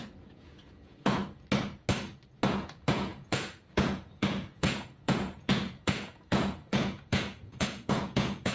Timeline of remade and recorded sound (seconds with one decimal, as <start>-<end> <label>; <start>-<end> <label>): 0.0-1.2 remade; 1.2-2.5 recorded; 2.5-8.5 remade

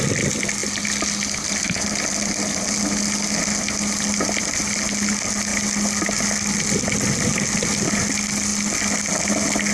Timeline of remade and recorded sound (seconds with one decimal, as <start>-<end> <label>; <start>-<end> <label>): 0.0-9.7 recorded